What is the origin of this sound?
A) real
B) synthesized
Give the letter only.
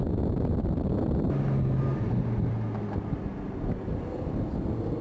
A